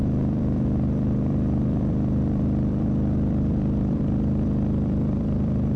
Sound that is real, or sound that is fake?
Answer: fake